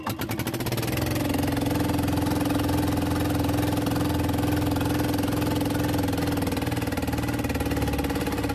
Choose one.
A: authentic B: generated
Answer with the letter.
A